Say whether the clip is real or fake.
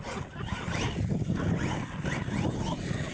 real